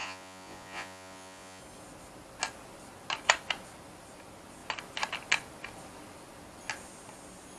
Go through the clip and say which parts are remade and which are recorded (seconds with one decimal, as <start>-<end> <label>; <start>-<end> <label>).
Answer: 0.0-1.6 remade; 1.6-7.6 recorded